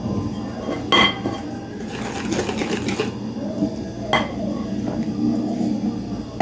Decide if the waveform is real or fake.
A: real